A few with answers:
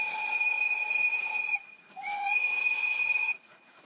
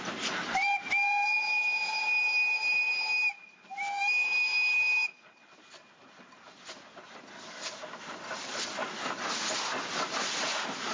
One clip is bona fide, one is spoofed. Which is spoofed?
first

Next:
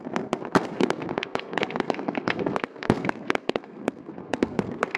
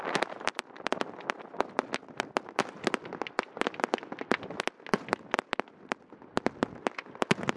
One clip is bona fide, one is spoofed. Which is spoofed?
first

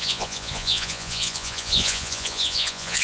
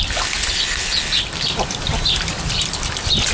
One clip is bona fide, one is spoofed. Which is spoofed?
first